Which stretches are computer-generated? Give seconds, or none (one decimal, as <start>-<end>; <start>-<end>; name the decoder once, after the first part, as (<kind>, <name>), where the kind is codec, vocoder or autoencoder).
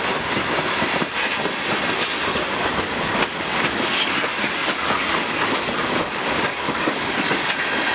2.3-4.1 (codec, DAC); 4.6-7.5